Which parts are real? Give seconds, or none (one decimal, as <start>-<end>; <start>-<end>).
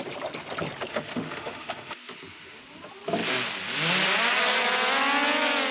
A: 0.0-0.9; 2.6-5.7